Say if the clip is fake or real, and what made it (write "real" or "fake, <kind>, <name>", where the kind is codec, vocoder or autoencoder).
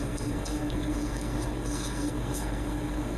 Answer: fake, codec, SNAC